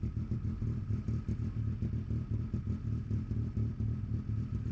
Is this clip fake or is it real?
real